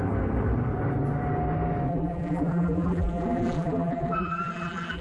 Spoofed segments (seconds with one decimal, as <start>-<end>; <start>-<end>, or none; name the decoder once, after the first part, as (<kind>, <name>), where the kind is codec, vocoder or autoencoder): 1.9-5.0 (vocoder, BigVGAN v2)